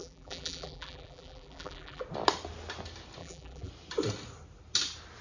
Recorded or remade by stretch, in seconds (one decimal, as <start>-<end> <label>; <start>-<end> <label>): 0.0-2.0 remade; 2.0-3.2 recorded; 3.2-3.7 remade; 3.7-5.2 recorded